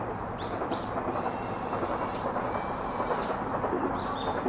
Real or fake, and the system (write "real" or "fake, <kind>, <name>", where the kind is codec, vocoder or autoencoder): fake, vocoder, BigVGAN v2